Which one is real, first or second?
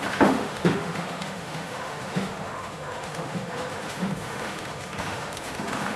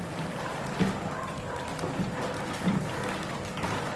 second